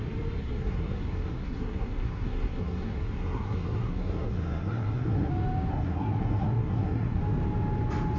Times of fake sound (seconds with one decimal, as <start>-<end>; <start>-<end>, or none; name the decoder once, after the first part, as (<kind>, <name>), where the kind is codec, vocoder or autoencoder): 0.4-5.3 (codec, SNAC); 5.7-7.2